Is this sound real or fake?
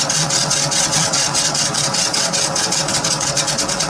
fake